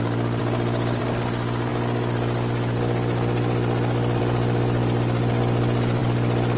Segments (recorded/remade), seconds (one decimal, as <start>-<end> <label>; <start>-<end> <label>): 0.0-6.6 recorded